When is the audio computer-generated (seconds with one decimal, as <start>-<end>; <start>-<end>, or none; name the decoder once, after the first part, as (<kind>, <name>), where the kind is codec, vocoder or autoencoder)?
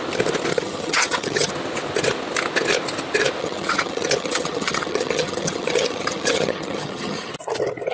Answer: 0.5-1.5 (vocoder, HiFi-GAN); 3.4-7.3